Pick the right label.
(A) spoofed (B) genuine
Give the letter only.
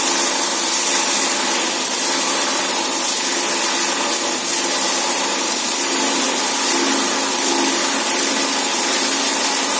B